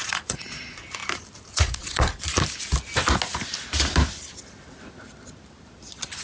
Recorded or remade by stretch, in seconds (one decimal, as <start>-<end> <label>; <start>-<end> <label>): 0.0-1.0 remade; 1.0-1.5 recorded; 1.5-2.1 remade; 2.1-5.8 recorded; 5.8-6.2 remade